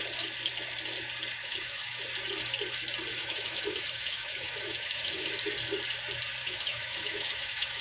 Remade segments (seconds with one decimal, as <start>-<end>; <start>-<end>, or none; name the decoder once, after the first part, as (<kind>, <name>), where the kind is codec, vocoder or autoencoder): 1.4-2.0 (autoencoder, DAC-VAE); 3.1-5.3; 6.4-7.8